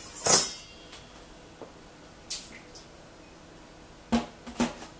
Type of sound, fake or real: real